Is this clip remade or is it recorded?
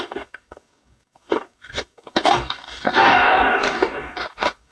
remade